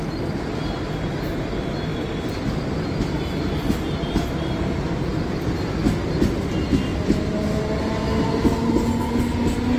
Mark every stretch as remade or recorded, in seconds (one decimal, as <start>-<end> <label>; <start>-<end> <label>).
0.0-9.8 recorded